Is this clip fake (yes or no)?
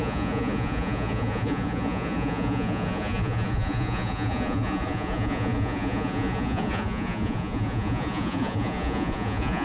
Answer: yes